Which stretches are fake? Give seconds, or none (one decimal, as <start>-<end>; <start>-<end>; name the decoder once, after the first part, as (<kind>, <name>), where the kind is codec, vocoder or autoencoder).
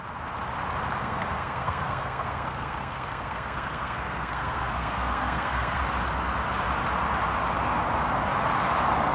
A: 1.0-5.8 (codec, SNAC)